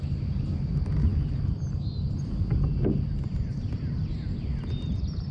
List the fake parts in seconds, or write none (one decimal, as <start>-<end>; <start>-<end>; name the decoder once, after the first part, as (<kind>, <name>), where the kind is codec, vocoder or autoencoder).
none